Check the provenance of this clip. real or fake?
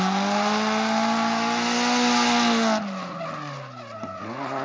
real